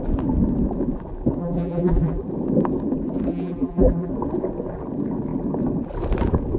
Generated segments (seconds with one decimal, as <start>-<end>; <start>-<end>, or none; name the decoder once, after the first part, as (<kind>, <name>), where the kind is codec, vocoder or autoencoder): 1.4-2.2 (vocoder, BigVGAN v2); 3.3-4.1

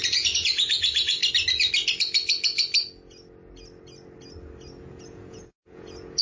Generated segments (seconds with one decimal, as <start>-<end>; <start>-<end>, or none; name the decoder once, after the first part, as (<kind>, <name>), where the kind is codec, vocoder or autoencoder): 0.0-1.2 (vocoder, Vocos); 4.8-6.2

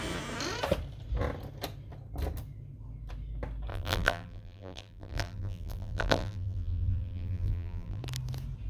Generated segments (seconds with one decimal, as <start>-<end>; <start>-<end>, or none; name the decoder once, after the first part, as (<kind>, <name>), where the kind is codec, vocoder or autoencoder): 3.7-8.0 (vocoder, BigVGAN v2)

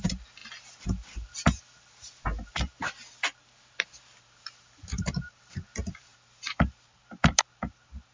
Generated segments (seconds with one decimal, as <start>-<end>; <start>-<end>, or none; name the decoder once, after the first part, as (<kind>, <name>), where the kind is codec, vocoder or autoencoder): 0.0-0.4 (vocoder, BigVGAN v2); 4.2-8.1

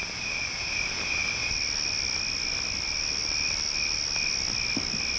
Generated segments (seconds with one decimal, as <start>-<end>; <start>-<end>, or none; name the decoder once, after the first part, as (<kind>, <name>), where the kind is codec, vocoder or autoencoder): none

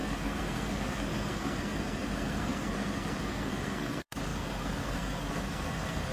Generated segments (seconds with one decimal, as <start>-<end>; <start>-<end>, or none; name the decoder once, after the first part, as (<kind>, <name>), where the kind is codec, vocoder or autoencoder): 0.0-6.1 (codec, SNAC)